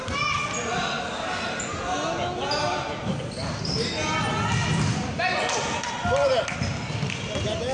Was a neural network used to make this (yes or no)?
no